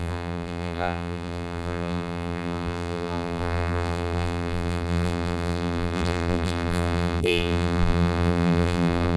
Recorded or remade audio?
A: remade